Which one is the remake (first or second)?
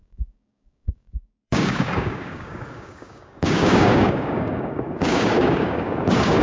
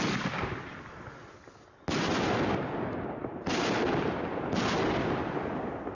first